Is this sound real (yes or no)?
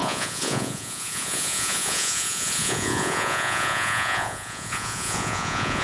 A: no